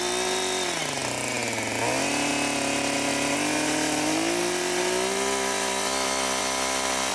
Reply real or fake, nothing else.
real